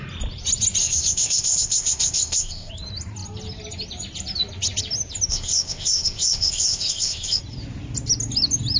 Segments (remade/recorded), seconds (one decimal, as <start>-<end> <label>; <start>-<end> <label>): 0.0-0.8 recorded; 0.8-2.7 remade; 2.7-5.3 recorded; 5.3-7.4 remade; 7.4-8.8 recorded